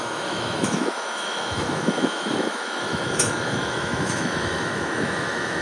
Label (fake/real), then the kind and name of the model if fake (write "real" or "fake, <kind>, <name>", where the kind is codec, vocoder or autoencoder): fake, autoencoder, DAC-VAE